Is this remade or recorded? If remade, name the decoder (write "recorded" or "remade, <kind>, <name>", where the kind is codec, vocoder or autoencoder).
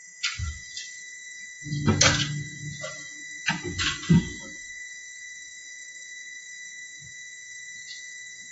recorded